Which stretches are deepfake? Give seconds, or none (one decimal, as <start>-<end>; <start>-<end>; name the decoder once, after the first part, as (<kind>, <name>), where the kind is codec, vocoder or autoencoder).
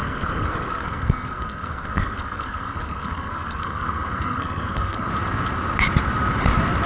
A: 0.0-5.1 (codec, SNAC)